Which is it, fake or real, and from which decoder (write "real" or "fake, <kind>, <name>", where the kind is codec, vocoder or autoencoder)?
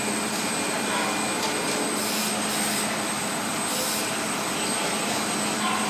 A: real